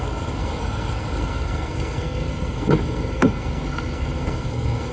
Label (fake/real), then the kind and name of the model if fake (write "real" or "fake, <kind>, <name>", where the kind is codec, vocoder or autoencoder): fake, codec, SNAC